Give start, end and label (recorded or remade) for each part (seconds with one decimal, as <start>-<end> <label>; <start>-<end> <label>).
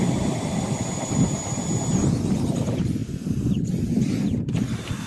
0.0-1.5 remade; 1.5-2.5 recorded; 2.5-5.1 remade